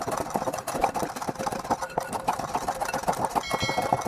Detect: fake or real real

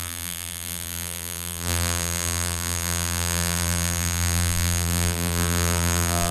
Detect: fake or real fake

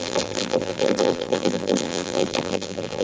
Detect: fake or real fake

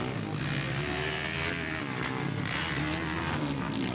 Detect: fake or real real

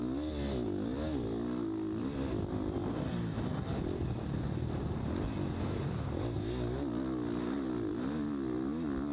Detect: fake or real real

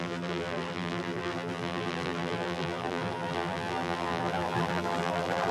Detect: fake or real fake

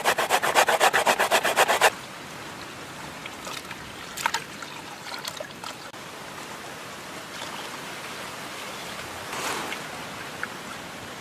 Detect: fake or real real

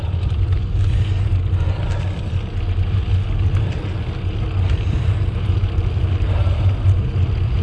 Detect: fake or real real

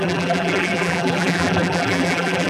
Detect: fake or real fake